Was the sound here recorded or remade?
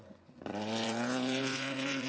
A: remade